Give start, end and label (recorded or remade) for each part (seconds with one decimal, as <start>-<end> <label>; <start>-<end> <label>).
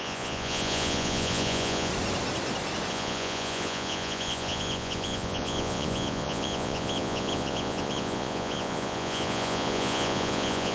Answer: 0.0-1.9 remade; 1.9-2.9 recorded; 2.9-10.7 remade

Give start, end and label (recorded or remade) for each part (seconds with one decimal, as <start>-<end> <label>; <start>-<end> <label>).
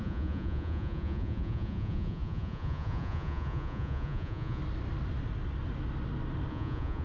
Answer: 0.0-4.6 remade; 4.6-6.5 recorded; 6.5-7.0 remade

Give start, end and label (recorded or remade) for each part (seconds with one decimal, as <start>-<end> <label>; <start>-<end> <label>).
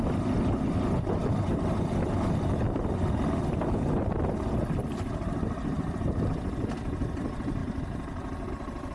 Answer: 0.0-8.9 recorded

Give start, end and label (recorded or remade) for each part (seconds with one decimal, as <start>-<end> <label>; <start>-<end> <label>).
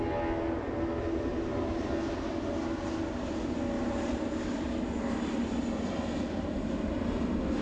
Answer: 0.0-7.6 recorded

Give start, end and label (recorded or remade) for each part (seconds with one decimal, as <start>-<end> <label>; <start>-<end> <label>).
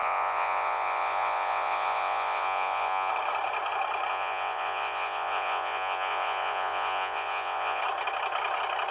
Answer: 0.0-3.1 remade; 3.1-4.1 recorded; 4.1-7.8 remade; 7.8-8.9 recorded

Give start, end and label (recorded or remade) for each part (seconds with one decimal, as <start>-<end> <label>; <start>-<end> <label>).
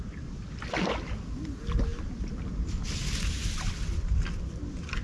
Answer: 0.0-5.0 recorded